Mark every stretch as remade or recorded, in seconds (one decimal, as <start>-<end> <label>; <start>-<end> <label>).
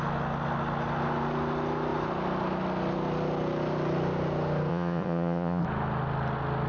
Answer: 0.0-4.7 recorded; 4.7-5.6 remade; 5.6-6.7 recorded